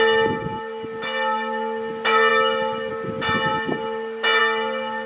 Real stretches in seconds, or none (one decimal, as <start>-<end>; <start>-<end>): 0.0-5.1

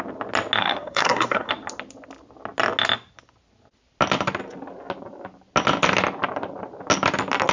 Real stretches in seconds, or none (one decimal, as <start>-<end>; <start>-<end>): 0.0-0.6; 1.5-7.5